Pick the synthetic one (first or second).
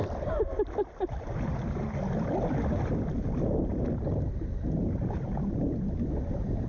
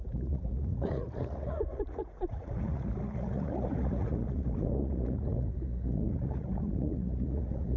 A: second